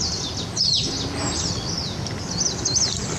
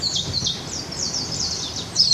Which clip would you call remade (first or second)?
second